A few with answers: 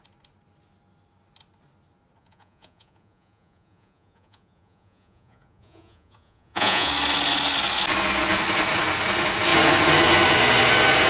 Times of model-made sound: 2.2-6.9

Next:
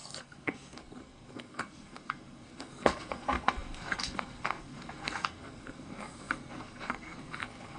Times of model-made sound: 0.0-7.8

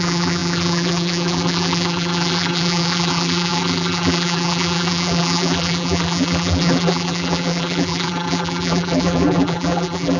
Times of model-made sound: 0.0-10.2